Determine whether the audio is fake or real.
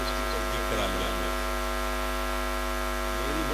real